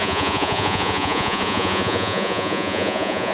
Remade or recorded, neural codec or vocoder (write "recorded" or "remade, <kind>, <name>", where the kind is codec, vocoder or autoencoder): remade, vocoder, Vocos